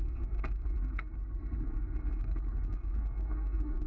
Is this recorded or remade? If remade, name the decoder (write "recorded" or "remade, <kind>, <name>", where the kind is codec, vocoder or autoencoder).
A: remade, codec, SNAC